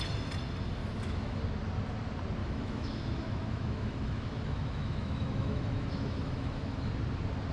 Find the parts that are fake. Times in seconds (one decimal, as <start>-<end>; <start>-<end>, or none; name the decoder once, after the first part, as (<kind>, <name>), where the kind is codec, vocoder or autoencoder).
0.8-1.4 (autoencoder, DAC-VAE); 2.4-6.9